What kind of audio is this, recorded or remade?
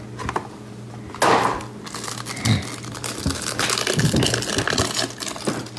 recorded